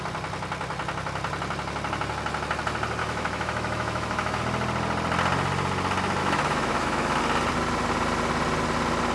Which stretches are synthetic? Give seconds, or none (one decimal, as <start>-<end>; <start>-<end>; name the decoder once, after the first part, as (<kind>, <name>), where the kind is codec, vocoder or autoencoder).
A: 3.0-4.4 (autoencoder, DAC-VAE); 6.2-7.2